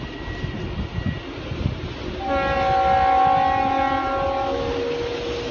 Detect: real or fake real